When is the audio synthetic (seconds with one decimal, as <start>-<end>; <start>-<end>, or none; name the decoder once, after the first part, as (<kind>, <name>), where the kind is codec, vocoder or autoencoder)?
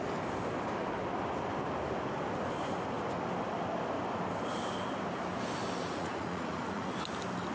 5.8-6.9 (vocoder, Vocos)